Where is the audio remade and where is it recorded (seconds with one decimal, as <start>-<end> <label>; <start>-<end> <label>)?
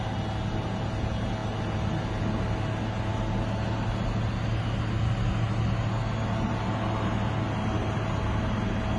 0.0-9.0 recorded